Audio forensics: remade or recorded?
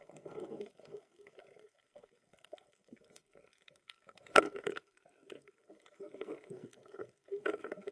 remade